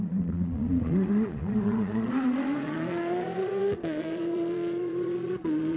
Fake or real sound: fake